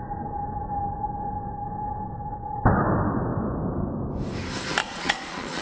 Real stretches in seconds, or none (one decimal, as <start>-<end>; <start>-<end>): 0.0-4.8